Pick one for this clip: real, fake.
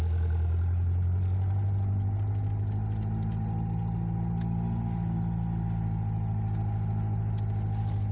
real